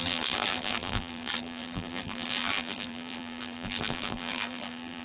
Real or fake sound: fake